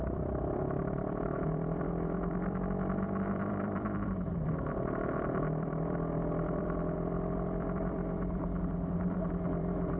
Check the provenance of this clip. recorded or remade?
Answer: remade